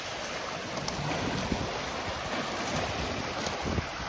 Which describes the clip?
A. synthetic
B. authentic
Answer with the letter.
B